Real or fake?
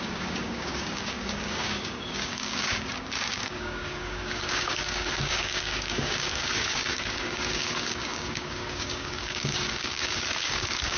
fake